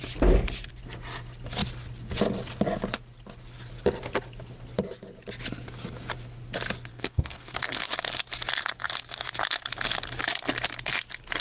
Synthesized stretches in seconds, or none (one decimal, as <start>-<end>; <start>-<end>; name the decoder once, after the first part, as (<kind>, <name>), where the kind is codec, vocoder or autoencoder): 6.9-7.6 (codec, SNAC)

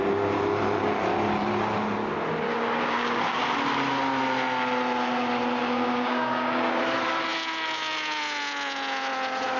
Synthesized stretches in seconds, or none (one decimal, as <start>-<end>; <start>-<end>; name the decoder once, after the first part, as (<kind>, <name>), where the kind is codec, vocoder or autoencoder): 2.5-3.4 (codec, DAC); 5.6-6.8

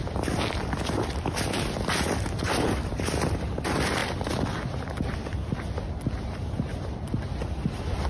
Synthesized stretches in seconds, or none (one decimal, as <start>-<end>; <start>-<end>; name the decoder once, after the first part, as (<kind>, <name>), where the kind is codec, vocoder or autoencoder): 0.0-4.0 (vocoder, BigVGAN v2); 6.8-8.1

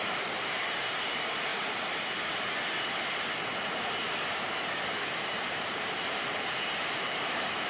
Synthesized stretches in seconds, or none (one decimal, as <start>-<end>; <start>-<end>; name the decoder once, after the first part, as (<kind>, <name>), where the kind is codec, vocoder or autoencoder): 0.0-1.5 (vocoder, BigVGAN v2); 5.1-7.7